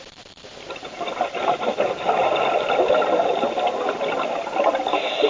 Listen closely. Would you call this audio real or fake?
real